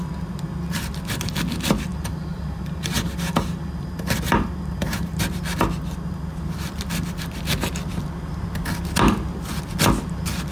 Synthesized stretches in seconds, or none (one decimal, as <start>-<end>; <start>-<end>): 1.9-5.2